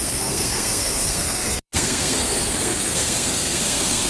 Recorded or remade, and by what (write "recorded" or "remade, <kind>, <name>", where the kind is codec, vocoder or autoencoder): remade, codec, SNAC